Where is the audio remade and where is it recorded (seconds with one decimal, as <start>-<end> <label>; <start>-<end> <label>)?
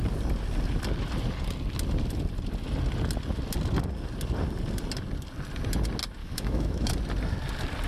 0.0-6.2 recorded; 6.2-6.9 remade; 6.9-7.9 recorded